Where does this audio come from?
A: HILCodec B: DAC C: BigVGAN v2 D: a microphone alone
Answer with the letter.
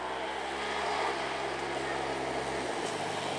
D